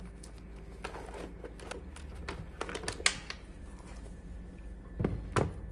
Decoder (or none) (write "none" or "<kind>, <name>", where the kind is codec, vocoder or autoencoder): none